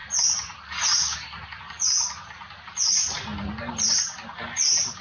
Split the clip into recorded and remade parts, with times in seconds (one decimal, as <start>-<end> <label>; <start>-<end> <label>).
0.0-5.0 recorded